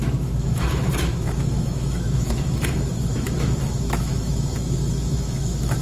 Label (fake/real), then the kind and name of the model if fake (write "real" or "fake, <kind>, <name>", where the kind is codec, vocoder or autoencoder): fake, autoencoder, DAC-VAE